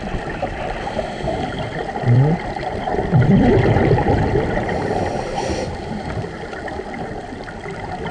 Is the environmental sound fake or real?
fake